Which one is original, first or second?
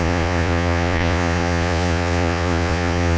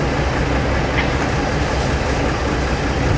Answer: second